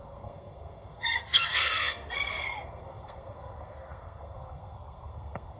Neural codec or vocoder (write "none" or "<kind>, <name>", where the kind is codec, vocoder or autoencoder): codec, SNAC